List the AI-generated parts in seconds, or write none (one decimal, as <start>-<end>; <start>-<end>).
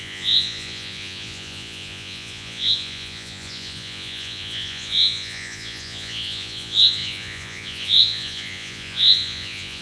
0.0-9.8